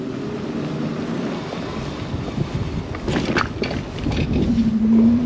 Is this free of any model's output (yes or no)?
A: yes